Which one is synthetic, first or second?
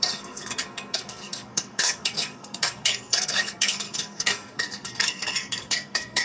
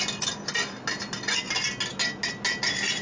first